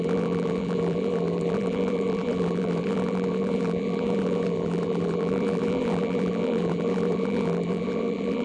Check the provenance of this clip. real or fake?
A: fake